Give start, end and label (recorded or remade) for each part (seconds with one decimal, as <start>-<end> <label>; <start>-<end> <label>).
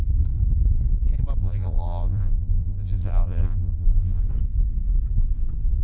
0.0-1.4 recorded; 1.4-4.2 remade; 4.2-5.8 recorded